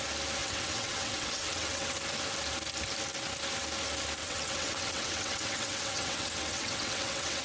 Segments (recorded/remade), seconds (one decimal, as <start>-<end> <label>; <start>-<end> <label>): 0.0-0.4 recorded; 0.4-1.9 remade; 1.9-4.2 recorded; 4.2-7.4 remade